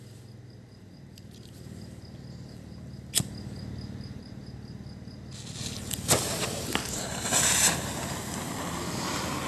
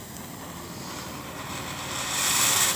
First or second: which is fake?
second